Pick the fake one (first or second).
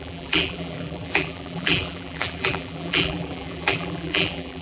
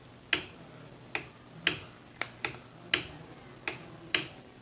first